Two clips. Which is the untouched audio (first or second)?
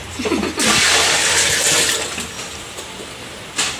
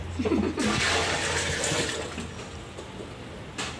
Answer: second